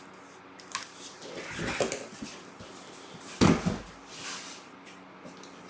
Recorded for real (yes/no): yes